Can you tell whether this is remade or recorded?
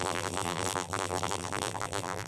remade